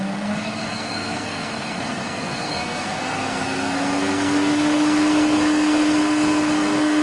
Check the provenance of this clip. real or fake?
fake